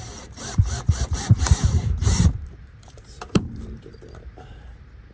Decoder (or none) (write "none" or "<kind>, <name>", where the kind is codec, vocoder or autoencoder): vocoder, BigVGAN v2